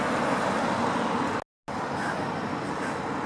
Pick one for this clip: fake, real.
real